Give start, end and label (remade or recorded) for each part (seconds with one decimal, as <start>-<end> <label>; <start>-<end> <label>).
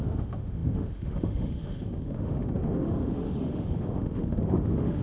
0.0-5.0 remade